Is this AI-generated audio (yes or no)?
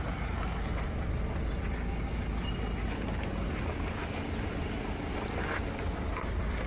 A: no